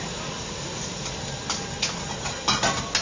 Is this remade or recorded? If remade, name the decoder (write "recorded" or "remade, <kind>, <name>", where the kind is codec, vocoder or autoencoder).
recorded